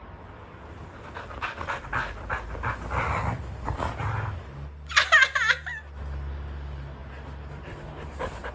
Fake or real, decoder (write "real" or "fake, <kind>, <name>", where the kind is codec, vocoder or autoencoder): real